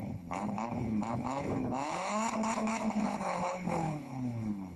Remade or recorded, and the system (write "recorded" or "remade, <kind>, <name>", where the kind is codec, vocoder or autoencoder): remade, codec, HILCodec